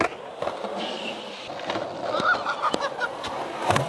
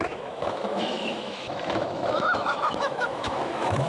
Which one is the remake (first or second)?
second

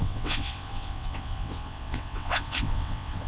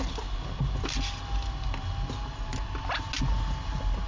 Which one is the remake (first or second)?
first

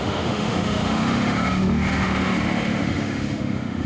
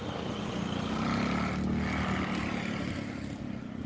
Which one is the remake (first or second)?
first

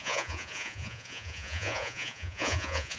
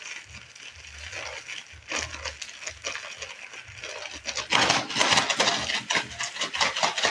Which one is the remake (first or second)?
first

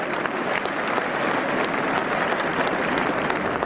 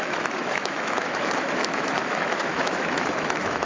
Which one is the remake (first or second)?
second